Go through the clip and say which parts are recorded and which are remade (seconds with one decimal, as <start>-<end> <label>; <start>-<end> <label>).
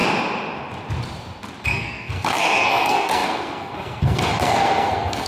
0.0-1.6 recorded; 1.6-5.3 remade